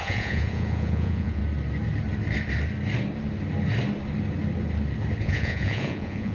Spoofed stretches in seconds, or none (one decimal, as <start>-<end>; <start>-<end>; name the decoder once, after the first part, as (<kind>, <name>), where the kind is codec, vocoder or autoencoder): 0.0-1.4 (vocoder, Vocos); 5.2-6.3